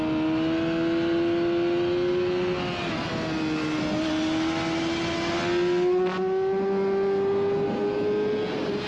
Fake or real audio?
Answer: real